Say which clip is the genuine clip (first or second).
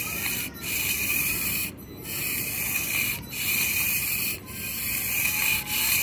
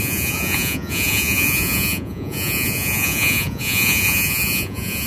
first